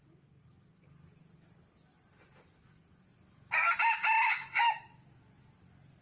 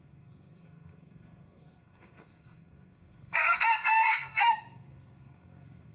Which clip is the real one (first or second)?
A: first